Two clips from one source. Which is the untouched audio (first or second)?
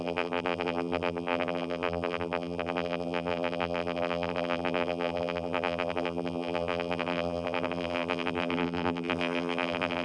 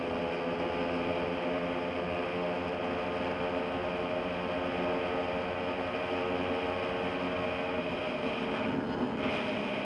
second